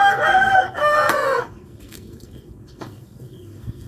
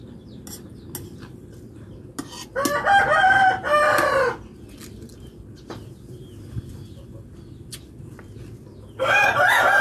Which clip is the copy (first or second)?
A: first